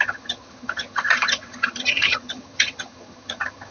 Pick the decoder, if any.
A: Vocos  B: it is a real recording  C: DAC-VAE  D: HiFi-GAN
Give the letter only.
D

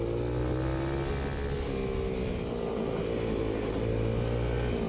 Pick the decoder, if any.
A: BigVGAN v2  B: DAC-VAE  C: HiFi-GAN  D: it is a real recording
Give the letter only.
D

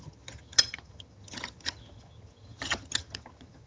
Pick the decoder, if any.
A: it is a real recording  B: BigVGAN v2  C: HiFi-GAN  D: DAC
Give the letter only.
C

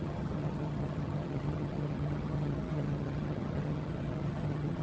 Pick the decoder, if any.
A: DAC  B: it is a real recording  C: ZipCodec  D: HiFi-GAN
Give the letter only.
D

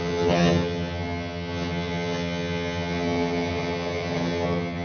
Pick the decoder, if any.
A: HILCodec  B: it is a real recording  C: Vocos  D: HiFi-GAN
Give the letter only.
D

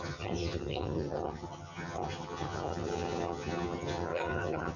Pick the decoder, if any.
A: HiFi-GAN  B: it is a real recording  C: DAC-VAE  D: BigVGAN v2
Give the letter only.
A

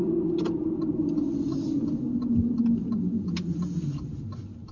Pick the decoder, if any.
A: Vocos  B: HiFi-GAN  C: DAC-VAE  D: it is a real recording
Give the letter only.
D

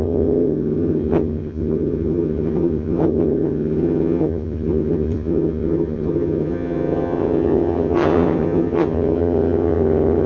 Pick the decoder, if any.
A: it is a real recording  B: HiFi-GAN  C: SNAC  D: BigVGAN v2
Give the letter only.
B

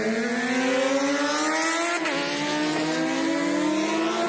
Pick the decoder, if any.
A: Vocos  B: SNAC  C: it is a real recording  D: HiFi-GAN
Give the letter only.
C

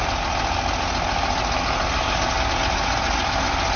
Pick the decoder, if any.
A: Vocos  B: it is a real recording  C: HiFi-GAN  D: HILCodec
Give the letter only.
B